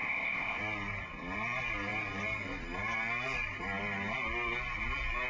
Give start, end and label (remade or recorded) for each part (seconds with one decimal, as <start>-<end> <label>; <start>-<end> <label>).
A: 0.0-0.6 remade; 0.6-5.3 recorded